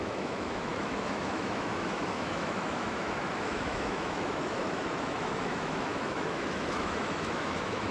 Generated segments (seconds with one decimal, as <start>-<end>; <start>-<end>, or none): 0.0-7.9